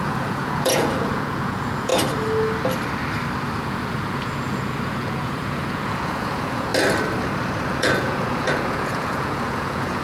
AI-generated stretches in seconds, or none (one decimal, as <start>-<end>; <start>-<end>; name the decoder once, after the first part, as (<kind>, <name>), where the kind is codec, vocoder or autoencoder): 0.0-1.9 (vocoder, Vocos); 3.6-6.7; 7.7-10.0